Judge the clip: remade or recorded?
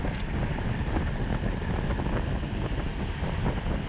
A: recorded